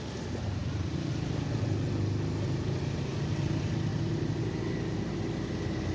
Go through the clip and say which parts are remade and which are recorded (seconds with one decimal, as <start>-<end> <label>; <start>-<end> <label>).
0.0-5.9 recorded